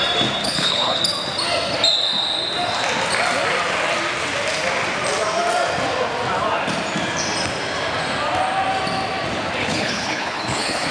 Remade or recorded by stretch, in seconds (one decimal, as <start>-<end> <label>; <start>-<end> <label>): 0.0-0.4 recorded; 0.4-1.0 remade; 1.0-9.6 recorded; 9.6-10.9 remade